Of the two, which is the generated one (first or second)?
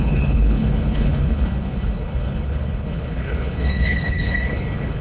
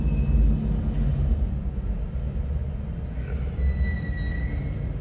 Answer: first